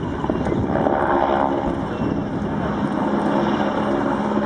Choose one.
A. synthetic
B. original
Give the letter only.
B